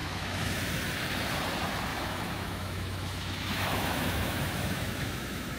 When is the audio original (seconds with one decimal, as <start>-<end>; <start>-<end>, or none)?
0.6-1.9